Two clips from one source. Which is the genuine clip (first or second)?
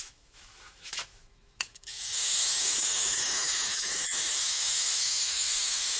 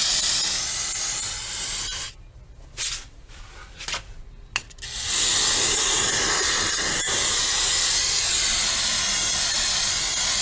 second